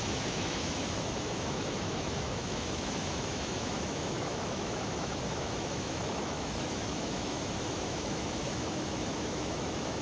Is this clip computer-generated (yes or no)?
yes